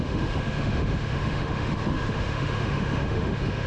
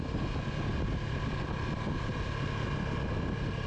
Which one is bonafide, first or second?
second